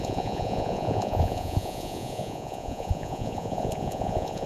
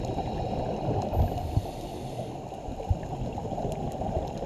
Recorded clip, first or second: second